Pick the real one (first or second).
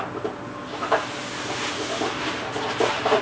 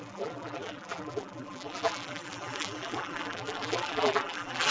first